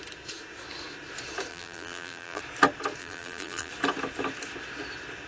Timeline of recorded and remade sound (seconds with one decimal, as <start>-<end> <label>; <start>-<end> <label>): 0.0-1.5 recorded; 1.5-2.4 remade; 2.4-3.0 recorded; 3.0-3.7 remade; 3.7-5.3 recorded